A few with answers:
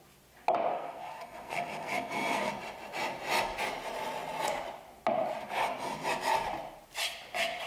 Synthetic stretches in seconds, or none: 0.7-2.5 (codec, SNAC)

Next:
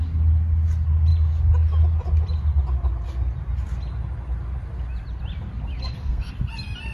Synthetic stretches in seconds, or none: 5.8-6.3 (codec, SNAC)

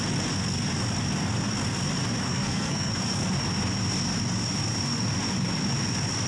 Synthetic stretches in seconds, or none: 2.3-2.9 (codec, SNAC)

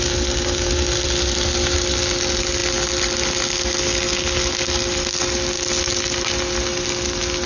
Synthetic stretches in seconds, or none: none

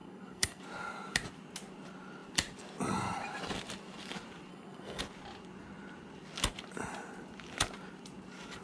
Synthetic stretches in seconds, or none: 0.0-0.6 (codec, SNAC); 4.5-5.0

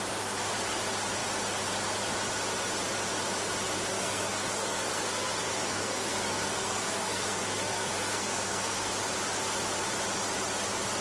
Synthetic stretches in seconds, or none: 3.9-8.9 (codec, SNAC)